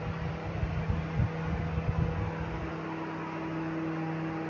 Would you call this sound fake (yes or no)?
no